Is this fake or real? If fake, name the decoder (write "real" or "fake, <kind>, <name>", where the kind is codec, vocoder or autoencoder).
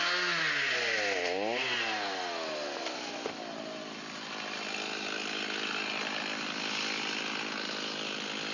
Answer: real